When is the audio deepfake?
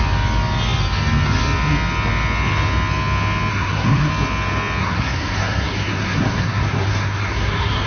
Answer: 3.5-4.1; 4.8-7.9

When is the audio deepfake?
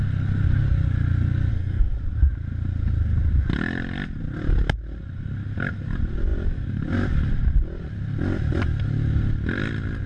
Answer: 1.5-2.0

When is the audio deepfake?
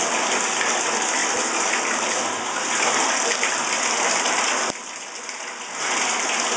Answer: none